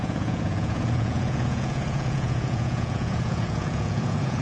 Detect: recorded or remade remade